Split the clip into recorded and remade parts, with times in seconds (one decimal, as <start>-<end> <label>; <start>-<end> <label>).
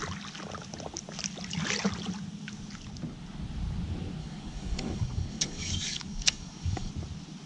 0.0-4.2 recorded; 4.2-6.9 remade; 6.9-7.5 recorded